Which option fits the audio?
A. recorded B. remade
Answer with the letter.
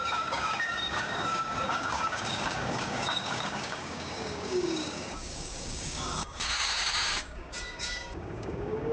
B